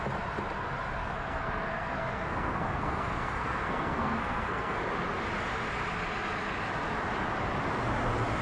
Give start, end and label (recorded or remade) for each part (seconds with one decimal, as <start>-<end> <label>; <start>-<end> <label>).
0.0-1.0 recorded; 1.0-4.8 remade; 4.8-8.4 recorded